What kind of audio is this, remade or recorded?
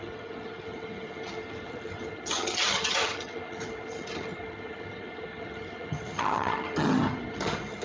remade